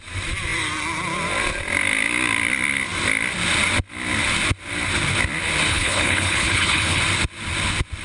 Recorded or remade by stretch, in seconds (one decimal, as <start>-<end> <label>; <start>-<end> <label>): 0.0-5.7 recorded; 5.7-7.0 remade; 7.0-8.0 recorded